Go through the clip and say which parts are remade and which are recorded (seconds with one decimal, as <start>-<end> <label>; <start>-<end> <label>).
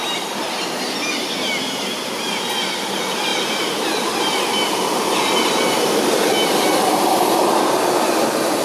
0.0-8.6 recorded